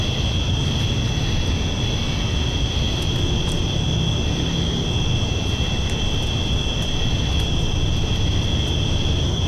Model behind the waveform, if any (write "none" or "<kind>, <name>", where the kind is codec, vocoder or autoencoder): none